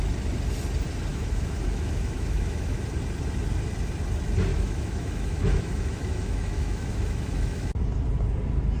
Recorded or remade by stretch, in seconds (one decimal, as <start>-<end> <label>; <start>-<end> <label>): 0.0-1.1 recorded; 1.1-2.8 remade; 2.8-4.5 recorded; 4.5-7.7 remade; 7.7-8.8 recorded